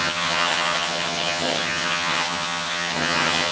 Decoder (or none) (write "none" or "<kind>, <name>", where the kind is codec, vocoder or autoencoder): vocoder, HiFi-GAN